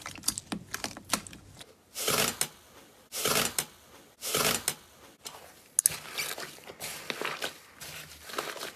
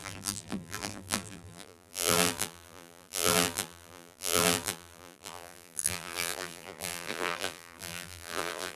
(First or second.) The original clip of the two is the first